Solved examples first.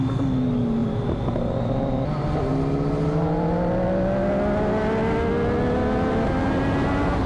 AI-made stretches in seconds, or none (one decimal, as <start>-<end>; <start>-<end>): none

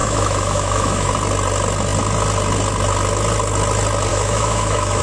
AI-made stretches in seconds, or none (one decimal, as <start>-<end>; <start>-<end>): 0.0-1.1; 4.1-5.0

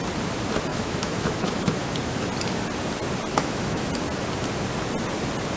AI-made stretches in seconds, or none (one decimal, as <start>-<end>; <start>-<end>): 0.7-1.9; 3.3-3.9